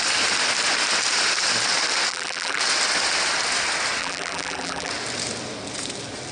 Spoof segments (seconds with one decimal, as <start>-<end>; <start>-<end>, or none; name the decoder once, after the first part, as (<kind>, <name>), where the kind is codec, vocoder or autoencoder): 2.1-2.6 (vocoder, BigVGAN v2); 4.0-4.9